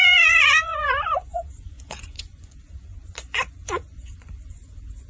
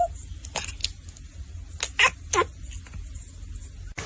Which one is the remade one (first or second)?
first